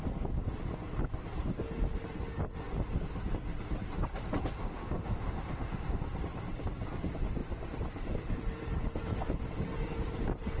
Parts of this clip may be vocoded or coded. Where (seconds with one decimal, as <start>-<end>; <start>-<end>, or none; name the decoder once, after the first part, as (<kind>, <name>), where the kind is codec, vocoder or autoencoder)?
4.6-6.0 (autoencoder, DAC-VAE)

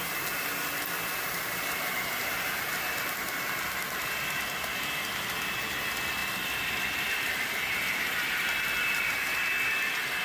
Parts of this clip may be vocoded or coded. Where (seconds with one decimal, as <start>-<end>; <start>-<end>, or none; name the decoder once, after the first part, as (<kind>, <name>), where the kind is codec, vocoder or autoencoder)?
none

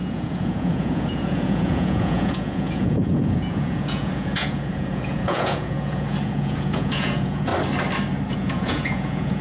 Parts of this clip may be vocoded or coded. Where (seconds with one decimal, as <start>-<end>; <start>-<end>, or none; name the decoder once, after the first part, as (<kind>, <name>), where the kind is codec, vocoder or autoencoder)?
0.0-7.5 (vocoder, Vocos); 8.3-9.4

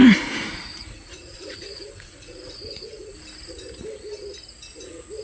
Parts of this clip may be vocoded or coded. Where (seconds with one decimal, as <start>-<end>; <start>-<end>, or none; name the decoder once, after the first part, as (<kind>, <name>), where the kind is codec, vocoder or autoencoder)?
0.0-3.1 (vocoder, Vocos)